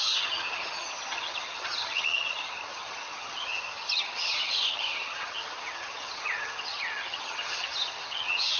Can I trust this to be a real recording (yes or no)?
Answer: no